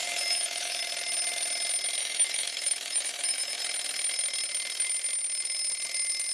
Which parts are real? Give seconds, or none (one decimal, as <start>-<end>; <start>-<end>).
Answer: 0.8-2.0; 3.6-6.3

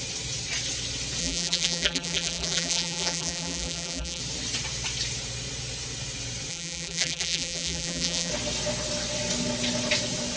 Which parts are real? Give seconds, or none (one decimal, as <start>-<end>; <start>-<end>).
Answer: 0.0-1.2; 4.2-6.5; 8.3-10.4

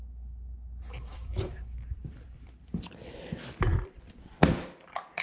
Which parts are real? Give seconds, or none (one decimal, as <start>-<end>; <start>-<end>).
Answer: 0.0-1.1; 2.6-3.7; 4.3-5.2